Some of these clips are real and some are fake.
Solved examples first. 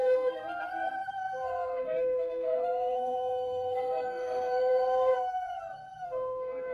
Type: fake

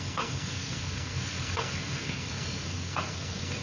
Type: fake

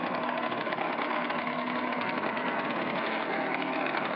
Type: fake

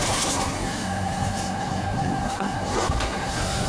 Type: fake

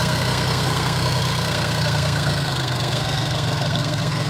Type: fake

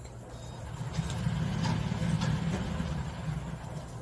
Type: real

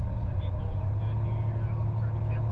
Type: real